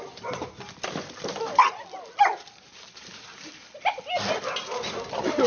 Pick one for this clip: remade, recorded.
recorded